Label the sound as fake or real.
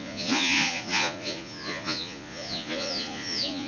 fake